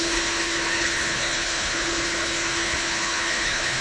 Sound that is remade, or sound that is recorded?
remade